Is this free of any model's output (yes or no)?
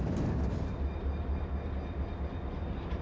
yes